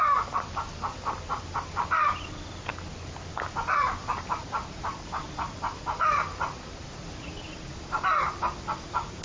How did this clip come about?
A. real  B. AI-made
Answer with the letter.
A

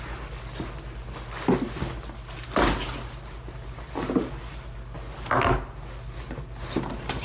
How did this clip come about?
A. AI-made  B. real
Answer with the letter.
B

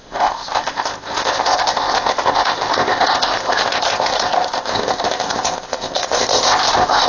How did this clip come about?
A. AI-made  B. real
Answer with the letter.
A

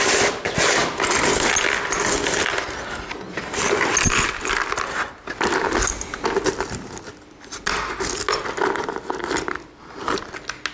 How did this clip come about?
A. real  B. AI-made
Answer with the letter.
A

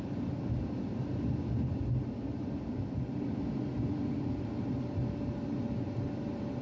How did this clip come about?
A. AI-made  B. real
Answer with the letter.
B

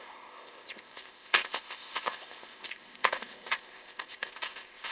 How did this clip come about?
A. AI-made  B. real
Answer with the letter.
A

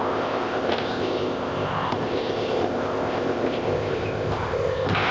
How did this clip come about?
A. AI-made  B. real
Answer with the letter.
A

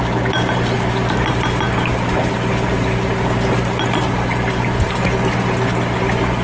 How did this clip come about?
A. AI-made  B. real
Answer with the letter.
B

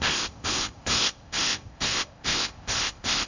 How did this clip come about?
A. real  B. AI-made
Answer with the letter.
B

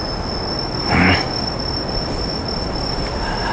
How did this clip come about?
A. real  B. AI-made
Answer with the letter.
A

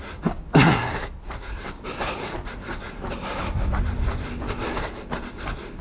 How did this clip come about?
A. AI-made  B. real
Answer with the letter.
B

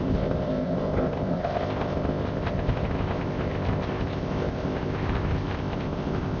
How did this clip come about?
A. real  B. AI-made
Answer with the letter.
B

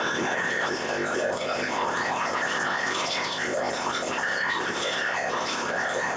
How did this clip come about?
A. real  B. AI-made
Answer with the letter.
B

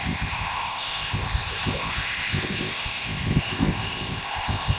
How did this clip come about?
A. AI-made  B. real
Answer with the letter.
A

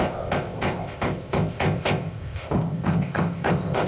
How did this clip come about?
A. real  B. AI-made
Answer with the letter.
B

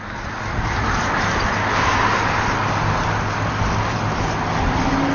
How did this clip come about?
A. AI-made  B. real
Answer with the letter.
B